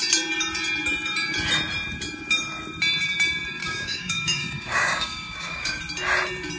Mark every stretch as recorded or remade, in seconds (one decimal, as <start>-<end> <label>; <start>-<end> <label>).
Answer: 0.0-3.6 recorded; 3.6-5.8 remade; 5.8-6.6 recorded